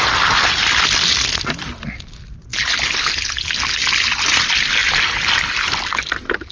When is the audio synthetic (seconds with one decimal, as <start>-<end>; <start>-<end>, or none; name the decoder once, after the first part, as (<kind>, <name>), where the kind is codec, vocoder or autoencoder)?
none